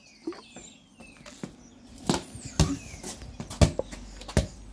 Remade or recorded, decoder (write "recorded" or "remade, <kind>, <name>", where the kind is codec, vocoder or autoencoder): recorded